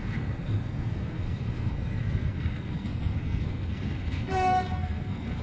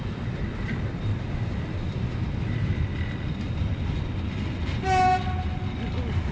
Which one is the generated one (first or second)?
first